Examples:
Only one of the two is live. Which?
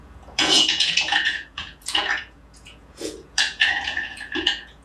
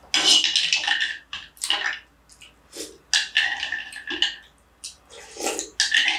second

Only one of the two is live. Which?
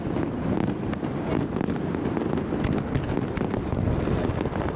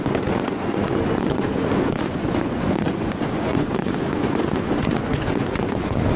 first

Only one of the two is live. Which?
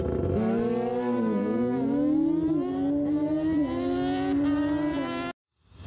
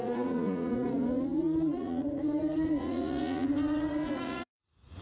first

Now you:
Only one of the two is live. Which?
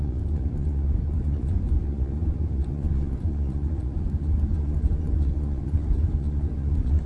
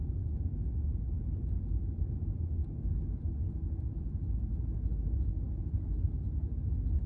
second